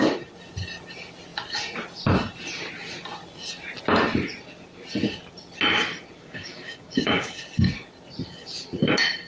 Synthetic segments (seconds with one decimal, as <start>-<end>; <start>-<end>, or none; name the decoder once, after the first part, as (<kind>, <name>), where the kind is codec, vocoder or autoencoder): 6.2-7.4 (codec, DAC)